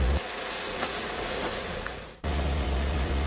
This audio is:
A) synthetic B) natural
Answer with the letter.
A